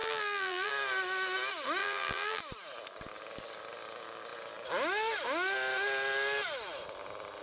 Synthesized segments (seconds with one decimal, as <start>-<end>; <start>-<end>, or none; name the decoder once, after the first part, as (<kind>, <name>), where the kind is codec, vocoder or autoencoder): 0.0-0.7 (vocoder, BigVGAN v2); 1.8-2.4

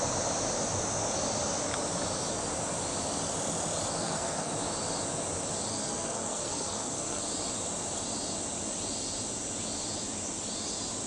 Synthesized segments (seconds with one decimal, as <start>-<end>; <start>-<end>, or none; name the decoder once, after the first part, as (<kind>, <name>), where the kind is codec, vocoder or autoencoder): 4.0-4.5 (codec, SNAC); 5.7-7.2

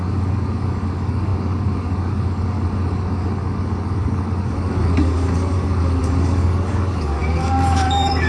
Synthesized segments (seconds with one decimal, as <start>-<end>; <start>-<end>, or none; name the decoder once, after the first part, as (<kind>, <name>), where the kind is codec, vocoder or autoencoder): 0.0-8.3 (codec, DAC)